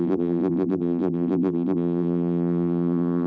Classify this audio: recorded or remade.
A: remade